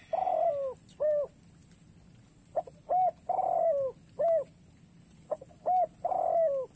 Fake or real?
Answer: real